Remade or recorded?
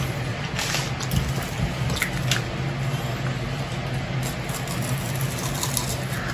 recorded